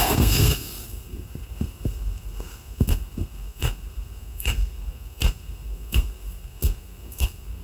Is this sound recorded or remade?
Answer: remade